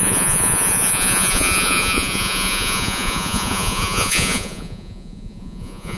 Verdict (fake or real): fake